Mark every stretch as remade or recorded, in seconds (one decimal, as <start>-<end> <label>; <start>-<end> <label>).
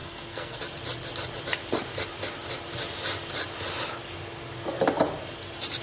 0.0-0.6 remade; 0.6-5.8 recorded